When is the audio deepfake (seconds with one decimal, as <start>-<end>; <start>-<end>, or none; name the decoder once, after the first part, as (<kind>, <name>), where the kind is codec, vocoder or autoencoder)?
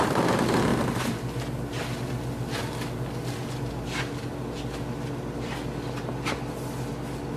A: none